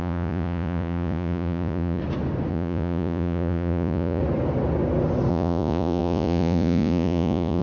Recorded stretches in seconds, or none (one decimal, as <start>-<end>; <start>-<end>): 2.0-2.5; 4.2-5.3